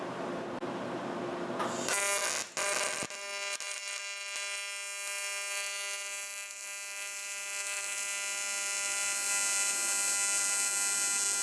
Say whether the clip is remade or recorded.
recorded